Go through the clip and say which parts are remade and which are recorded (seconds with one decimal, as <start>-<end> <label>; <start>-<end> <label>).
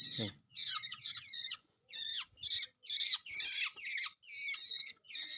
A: 0.0-2.1 remade; 2.1-4.7 recorded; 4.7-5.4 remade